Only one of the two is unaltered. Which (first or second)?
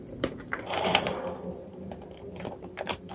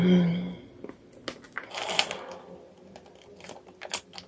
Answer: second